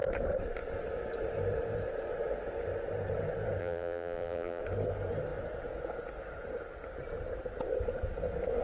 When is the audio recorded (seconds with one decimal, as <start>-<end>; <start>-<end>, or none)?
0.0-3.6; 4.6-8.6